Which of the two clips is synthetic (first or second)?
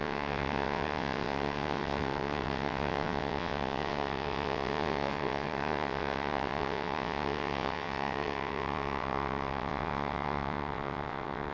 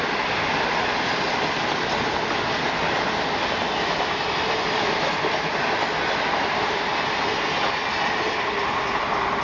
first